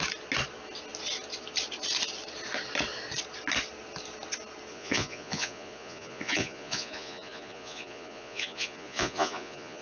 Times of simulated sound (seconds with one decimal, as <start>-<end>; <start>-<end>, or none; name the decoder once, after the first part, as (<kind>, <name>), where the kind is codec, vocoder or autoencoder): 4.7-9.8 (vocoder, Vocos)